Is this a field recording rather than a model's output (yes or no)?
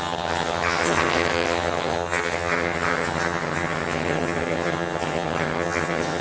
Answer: no